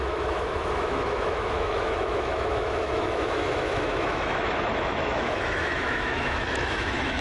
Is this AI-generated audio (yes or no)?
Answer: yes